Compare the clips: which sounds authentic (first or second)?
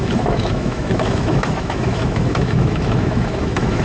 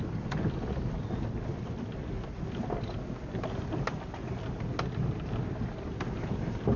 second